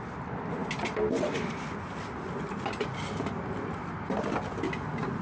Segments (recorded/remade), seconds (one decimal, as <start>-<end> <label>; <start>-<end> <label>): 0.0-5.2 recorded